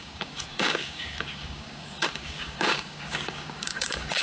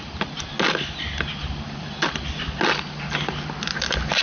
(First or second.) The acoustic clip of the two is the second